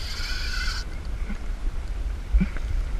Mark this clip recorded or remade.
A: recorded